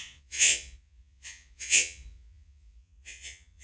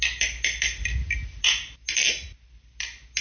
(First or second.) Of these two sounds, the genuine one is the second